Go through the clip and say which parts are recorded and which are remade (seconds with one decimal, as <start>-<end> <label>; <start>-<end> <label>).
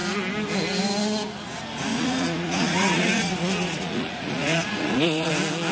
0.0-1.9 recorded; 1.9-5.3 remade; 5.3-5.7 recorded